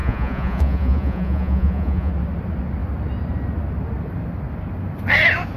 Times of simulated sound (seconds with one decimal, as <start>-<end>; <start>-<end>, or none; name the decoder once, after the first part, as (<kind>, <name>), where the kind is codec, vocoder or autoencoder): 0.0-2.1 (vocoder, Vocos)